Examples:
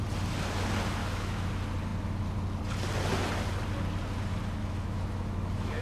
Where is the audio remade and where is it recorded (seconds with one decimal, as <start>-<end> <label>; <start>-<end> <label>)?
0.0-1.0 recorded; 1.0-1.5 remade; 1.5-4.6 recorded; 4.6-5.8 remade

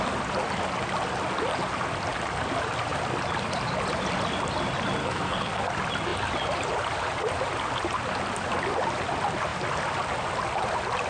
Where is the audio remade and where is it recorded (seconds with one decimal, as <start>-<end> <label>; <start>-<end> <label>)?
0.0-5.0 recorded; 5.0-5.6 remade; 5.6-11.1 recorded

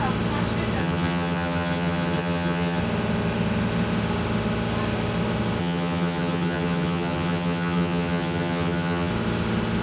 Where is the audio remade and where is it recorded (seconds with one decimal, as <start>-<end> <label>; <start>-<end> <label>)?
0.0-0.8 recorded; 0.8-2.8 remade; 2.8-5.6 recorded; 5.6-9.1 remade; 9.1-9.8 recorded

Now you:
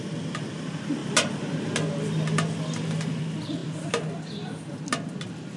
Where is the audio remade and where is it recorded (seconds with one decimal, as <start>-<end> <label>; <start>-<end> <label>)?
0.0-5.6 recorded

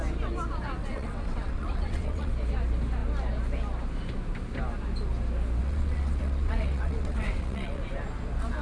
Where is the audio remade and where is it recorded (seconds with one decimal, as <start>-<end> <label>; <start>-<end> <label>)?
0.0-0.8 recorded; 0.8-2.3 remade; 2.3-5.6 recorded; 5.6-7.8 remade; 7.8-8.6 recorded